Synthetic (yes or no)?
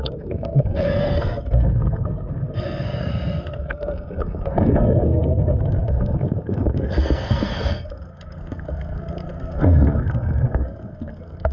yes